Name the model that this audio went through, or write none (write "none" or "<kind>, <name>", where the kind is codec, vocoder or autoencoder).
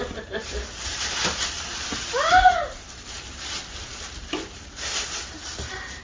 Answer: vocoder, BigVGAN v2